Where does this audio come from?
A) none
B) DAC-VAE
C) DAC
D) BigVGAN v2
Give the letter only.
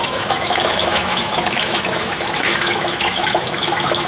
B